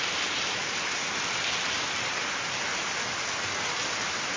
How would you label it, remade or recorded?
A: recorded